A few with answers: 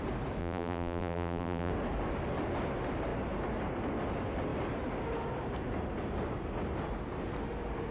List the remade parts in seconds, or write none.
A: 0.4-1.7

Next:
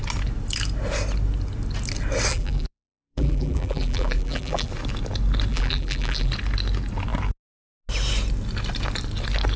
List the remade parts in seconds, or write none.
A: 2.3-4.7; 5.5-6.3

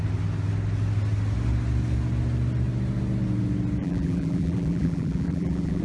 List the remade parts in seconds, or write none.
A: 3.8-5.8

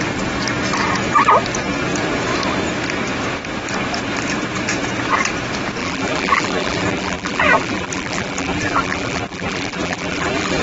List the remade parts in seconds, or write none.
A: 5.8-10.6

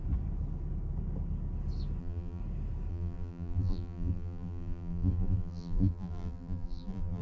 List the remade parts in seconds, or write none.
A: 2.0-2.4; 2.9-7.2

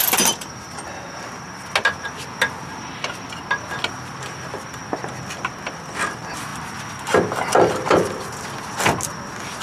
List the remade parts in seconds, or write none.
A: none

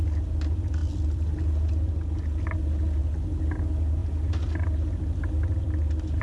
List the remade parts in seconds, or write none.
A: 0.8-1.4